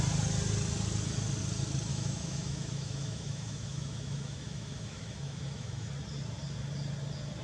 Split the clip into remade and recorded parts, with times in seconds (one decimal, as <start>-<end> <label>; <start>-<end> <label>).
0.0-1.9 recorded; 1.9-5.9 remade; 5.9-7.4 recorded